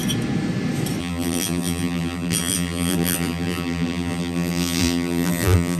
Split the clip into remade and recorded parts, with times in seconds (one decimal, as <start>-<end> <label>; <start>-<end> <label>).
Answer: 0.0-1.0 recorded; 1.0-5.8 remade